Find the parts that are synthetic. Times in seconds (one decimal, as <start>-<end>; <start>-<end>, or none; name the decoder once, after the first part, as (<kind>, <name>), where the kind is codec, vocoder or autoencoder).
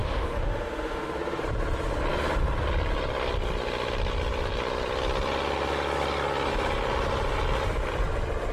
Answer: 0.0-1.4 (autoencoder, DAC-VAE)